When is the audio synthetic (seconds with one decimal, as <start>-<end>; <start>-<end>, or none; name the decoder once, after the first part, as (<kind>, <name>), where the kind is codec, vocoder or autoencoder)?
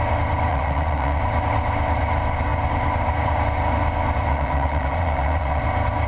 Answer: 0.5-1.2 (vocoder, Vocos); 4.3-5.6